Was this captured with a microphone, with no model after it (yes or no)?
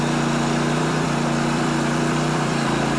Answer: no